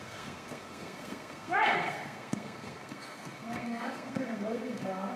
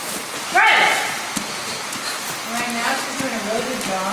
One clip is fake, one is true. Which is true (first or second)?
second